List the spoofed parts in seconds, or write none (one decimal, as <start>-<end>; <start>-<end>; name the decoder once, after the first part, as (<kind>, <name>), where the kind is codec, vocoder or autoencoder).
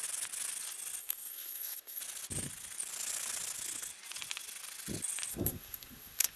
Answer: 1.0-2.0 (codec, SNAC); 5.3-6.4